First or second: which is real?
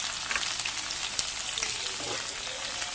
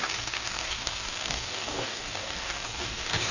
first